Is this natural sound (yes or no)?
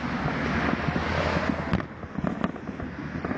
yes